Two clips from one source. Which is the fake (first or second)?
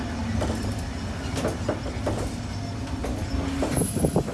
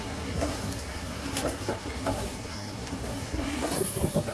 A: second